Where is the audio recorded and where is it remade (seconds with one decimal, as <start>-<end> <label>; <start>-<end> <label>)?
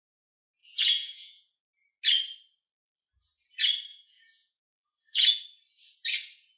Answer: 0.0-0.6 recorded; 0.6-1.6 remade; 1.6-3.9 recorded; 3.9-5.4 remade; 5.4-6.6 recorded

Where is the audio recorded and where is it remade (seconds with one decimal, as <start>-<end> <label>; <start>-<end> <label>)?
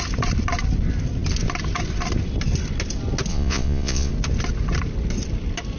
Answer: 0.0-3.3 recorded; 3.3-4.1 remade; 4.1-5.8 recorded